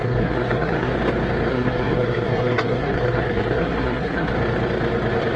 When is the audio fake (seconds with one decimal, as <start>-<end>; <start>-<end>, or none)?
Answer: 0.0-0.9; 1.5-4.3